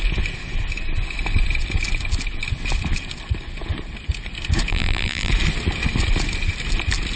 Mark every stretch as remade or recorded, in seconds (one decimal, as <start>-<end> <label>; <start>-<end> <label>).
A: 0.0-4.7 recorded; 4.7-5.3 remade; 5.3-7.2 recorded

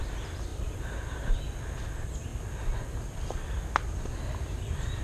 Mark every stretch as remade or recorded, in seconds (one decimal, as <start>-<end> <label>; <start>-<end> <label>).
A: 0.0-5.0 recorded